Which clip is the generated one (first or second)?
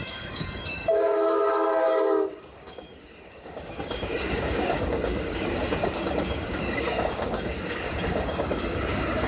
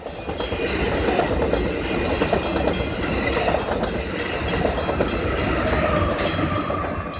first